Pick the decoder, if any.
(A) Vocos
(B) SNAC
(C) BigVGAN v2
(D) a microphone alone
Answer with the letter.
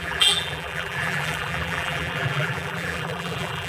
C